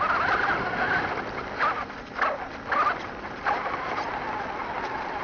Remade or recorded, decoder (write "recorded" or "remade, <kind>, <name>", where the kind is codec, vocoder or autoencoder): recorded